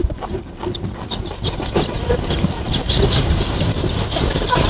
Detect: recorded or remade remade